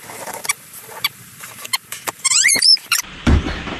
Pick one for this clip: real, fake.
fake